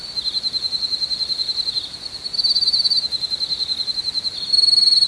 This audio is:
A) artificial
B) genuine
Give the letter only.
B